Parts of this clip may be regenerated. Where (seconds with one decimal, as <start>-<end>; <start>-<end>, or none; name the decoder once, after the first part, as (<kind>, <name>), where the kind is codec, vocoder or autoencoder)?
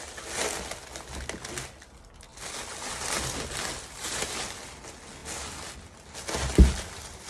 none